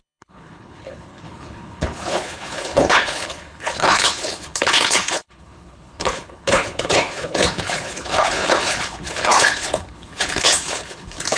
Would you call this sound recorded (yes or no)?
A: no